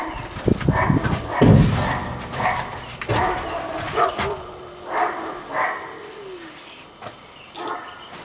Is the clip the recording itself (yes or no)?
yes